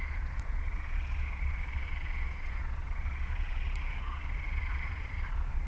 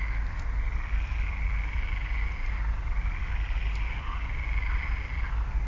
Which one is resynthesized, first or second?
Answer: first